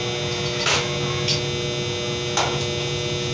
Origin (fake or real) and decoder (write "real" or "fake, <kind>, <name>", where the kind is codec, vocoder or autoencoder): real